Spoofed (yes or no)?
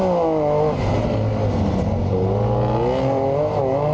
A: no